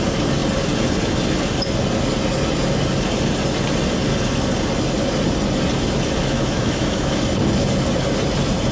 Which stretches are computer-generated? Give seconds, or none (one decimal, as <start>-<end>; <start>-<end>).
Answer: 6.2-7.2